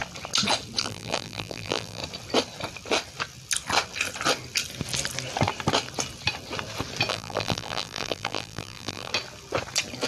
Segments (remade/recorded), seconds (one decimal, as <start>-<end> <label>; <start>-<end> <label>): 0.0-0.8 recorded; 0.8-2.0 remade; 2.0-7.1 recorded; 7.1-9.1 remade; 9.1-10.1 recorded